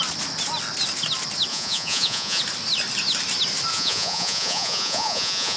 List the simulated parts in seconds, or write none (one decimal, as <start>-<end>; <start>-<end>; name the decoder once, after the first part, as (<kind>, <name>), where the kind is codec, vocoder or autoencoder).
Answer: 1.5-2.4 (vocoder, Vocos); 3.7-5.6